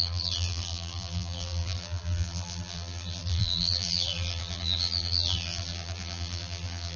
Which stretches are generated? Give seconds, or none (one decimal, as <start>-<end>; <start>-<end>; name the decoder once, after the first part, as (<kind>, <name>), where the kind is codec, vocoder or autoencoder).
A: 0.0-7.0 (vocoder, BigVGAN v2)